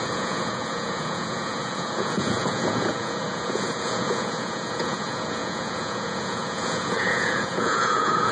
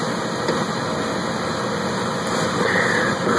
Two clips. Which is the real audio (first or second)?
second